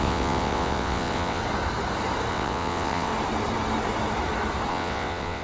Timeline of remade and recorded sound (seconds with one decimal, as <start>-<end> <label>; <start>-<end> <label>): 0.0-1.4 remade; 1.4-2.3 recorded; 2.3-3.1 remade; 3.1-4.7 recorded; 4.7-5.4 remade